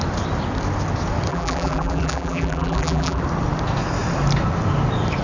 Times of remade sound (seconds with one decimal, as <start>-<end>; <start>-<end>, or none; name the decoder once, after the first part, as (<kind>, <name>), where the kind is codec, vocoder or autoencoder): 1.3-3.2 (vocoder, BigVGAN v2)

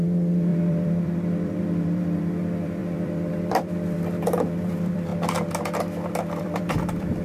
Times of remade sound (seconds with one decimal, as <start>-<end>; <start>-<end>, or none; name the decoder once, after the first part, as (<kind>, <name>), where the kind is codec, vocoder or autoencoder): 0.0-5.1 (vocoder, BigVGAN v2); 5.8-7.2

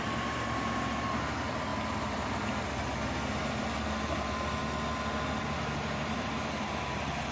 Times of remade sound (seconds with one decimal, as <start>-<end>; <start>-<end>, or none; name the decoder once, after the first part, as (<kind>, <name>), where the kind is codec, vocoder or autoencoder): 0.0-1.7 (vocoder, BigVGAN v2); 3.6-4.6; 5.4-7.3

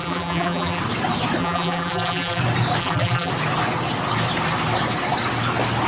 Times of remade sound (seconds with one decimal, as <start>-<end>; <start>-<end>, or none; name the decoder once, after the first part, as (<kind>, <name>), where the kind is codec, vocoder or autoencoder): 0.0-0.8 (vocoder, BigVGAN v2); 1.4-2.4; 2.8-3.3

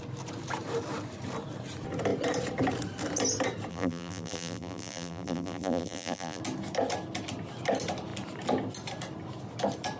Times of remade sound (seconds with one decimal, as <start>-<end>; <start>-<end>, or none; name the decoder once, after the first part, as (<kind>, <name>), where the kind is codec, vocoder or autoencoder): 3.7-6.4 (vocoder, BigVGAN v2)

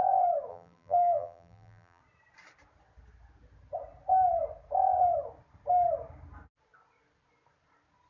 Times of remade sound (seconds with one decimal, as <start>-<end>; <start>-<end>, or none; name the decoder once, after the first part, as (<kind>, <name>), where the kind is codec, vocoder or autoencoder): 0.5-2.0 (vocoder, BigVGAN v2)

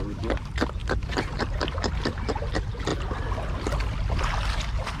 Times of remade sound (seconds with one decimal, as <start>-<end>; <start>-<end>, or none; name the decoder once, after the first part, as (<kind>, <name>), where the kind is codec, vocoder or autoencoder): 0.0-2.9 (vocoder, BigVGAN v2)

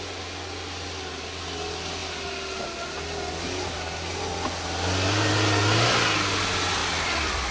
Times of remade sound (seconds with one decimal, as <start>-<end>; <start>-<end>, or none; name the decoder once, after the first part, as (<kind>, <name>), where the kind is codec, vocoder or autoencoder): 6.8-7.5 (vocoder, BigVGAN v2)